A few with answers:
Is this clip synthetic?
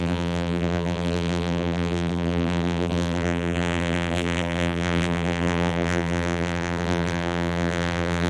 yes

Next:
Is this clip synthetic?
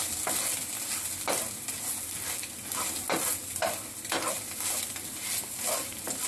no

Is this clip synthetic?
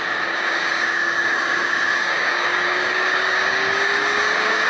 yes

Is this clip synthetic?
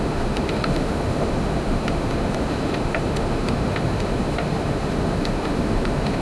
yes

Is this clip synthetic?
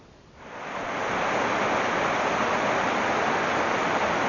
no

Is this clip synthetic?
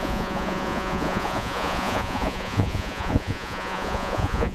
yes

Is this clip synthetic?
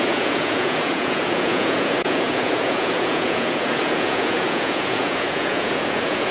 yes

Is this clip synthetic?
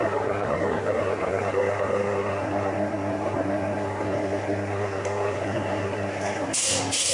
yes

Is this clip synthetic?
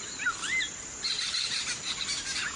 no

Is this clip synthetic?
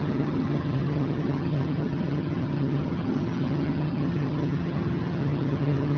yes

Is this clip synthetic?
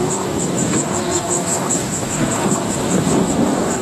yes